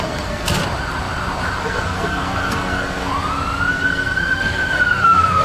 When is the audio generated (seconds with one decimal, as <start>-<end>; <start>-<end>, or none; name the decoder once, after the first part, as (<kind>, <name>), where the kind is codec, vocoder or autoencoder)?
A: 0.0-0.6 (codec, SNAC); 1.6-3.1; 3.7-5.4